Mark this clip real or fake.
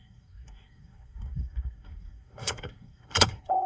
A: fake